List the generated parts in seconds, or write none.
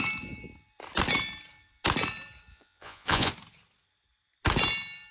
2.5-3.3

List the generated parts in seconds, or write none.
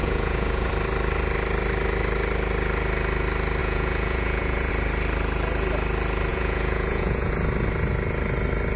0.0-0.7; 3.6-4.7; 6.3-7.3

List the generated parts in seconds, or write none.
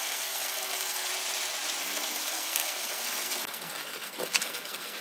0.0-1.1; 1.8-5.0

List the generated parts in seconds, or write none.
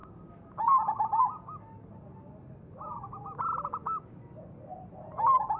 none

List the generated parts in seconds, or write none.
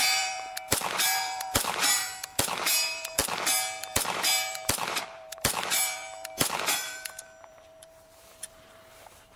0.0-3.2; 3.8-9.4